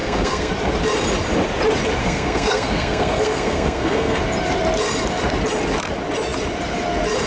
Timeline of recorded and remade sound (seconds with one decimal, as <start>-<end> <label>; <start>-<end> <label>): 0.0-0.5 remade; 0.5-2.0 recorded; 2.0-4.2 remade; 4.2-7.3 recorded